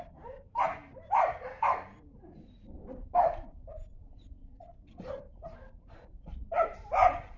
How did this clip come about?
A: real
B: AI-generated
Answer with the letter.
B